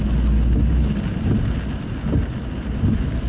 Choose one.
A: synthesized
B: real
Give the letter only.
B